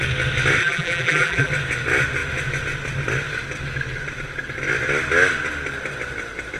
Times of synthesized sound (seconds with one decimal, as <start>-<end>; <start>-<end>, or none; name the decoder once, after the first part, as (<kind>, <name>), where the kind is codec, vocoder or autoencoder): 0.6-1.5 (vocoder, BigVGAN v2)